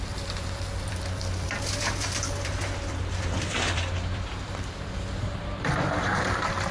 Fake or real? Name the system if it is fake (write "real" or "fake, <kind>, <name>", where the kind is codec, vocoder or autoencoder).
fake, vocoder, BigVGAN v2